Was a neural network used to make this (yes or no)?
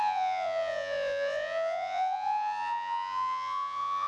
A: yes